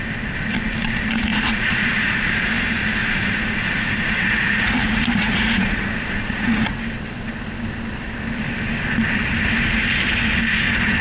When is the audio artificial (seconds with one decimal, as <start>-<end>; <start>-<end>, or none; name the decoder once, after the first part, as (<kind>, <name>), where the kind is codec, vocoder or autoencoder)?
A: 1.3-2.3 (vocoder, Vocos); 3.0-6.8